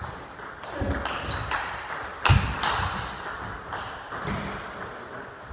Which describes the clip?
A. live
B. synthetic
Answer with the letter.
A